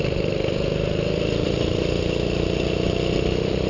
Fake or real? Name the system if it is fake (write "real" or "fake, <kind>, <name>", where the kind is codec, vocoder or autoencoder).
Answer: fake, vocoder, BigVGAN v2